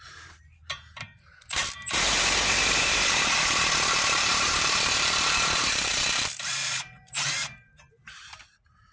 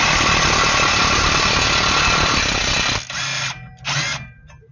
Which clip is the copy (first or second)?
first